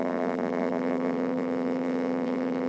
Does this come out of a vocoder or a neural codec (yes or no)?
yes